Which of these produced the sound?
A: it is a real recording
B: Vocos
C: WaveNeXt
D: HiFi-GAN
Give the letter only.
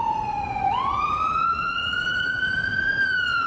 B